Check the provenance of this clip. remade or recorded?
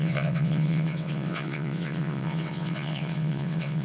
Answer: remade